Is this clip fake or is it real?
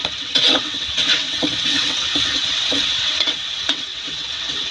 fake